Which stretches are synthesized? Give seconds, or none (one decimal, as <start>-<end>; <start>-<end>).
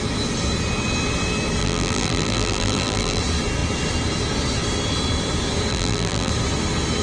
1.6-3.2; 5.7-6.3